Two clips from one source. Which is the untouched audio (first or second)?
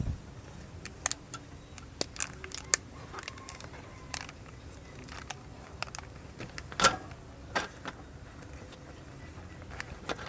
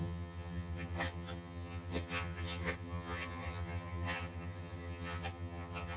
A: first